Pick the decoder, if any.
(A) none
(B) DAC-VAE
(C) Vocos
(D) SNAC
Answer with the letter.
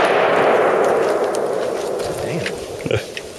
A